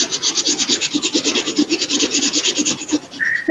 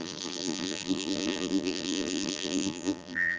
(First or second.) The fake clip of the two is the second